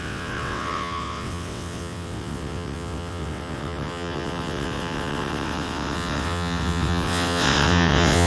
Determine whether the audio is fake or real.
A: fake